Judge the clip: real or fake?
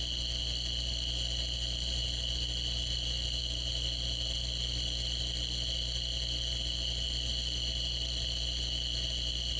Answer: real